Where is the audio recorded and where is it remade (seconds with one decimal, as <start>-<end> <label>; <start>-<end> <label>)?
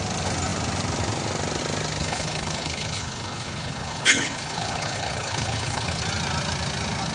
0.0-2.0 recorded; 2.0-6.0 remade; 6.0-7.1 recorded